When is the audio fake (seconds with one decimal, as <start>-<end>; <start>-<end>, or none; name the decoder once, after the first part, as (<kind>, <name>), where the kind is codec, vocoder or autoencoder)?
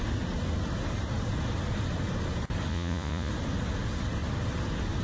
2.7-3.3 (vocoder, Vocos)